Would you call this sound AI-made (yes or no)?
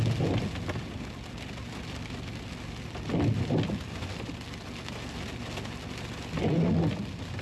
no